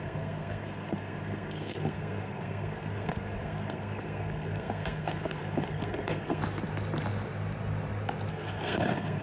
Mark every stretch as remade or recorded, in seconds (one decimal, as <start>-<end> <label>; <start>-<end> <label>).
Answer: 0.0-6.4 remade; 6.4-8.3 recorded; 8.3-9.2 remade